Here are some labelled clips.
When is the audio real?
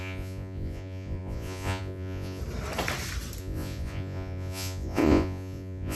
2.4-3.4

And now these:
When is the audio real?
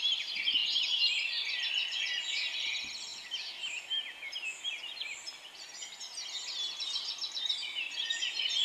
0.0-8.6